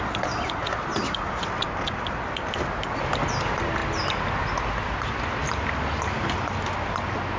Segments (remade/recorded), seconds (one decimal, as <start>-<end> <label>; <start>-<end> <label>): 0.0-7.4 recorded